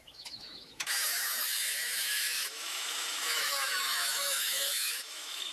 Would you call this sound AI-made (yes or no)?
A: yes